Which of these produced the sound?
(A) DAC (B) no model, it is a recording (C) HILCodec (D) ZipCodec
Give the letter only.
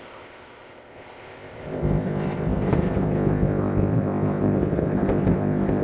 D